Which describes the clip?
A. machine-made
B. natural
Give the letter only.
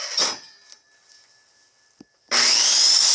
B